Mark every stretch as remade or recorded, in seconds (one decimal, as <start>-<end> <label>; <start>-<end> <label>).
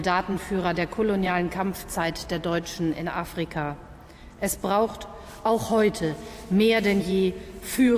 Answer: 0.0-2.2 remade; 2.2-7.0 recorded; 7.0-8.0 remade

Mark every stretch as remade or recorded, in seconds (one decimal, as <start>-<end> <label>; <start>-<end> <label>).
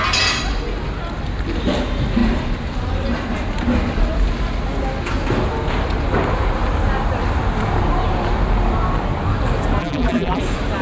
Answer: 0.0-9.8 recorded; 9.8-10.4 remade; 10.4-10.8 recorded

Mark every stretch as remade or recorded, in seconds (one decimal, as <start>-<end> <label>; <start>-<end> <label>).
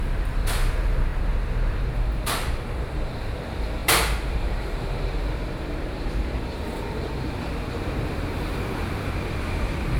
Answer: 0.0-10.0 remade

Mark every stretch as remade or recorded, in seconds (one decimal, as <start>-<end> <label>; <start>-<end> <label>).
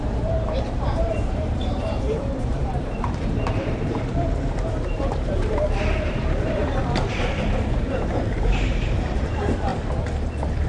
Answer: 0.0-6.8 remade; 6.8-7.3 recorded; 7.3-9.7 remade; 9.7-10.7 recorded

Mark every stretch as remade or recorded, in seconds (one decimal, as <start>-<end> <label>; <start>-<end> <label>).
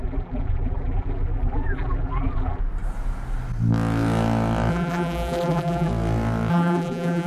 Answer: 0.0-2.6 remade; 2.6-4.7 recorded; 4.7-5.9 remade; 5.9-6.5 recorded; 6.5-7.3 remade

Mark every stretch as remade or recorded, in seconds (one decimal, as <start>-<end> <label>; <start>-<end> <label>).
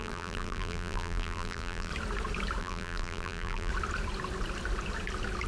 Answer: 0.0-1.9 remade; 1.9-2.6 recorded; 2.6-3.7 remade; 3.7-5.5 recorded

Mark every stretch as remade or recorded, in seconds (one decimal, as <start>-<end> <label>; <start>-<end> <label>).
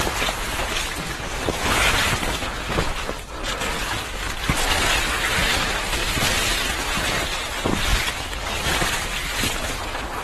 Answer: 0.0-0.6 recorded; 0.6-4.9 remade; 4.9-7.9 recorded; 7.9-8.7 remade; 8.7-10.2 recorded